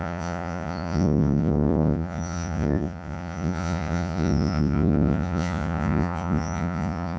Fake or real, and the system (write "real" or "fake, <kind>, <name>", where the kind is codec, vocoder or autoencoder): fake, vocoder, Vocos